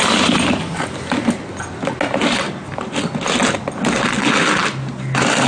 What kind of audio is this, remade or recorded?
recorded